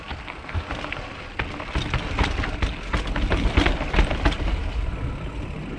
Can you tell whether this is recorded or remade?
recorded